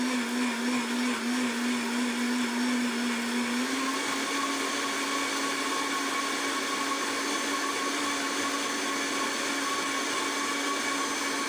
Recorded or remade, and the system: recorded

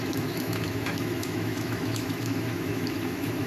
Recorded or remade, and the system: remade, autoencoder, DAC-VAE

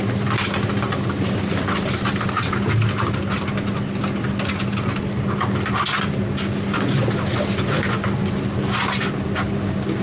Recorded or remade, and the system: recorded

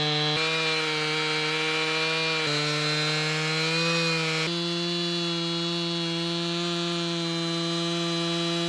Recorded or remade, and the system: recorded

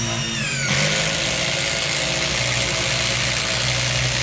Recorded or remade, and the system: recorded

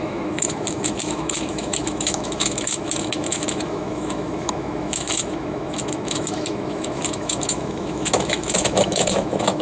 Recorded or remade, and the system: remade, autoencoder, DAC-VAE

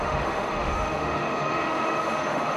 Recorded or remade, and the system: remade, autoencoder, DAC-VAE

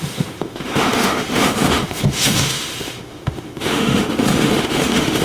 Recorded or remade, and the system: remade, autoencoder, DAC-VAE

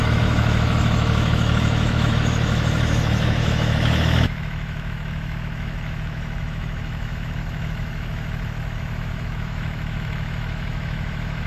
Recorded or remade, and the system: remade, autoencoder, DAC-VAE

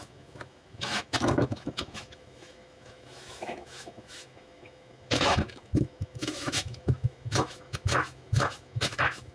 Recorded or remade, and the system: remade, autoencoder, DAC-VAE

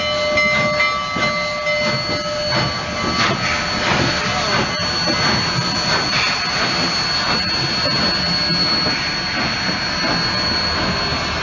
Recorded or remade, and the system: recorded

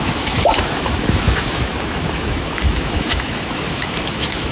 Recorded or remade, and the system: remade, autoencoder, DAC-VAE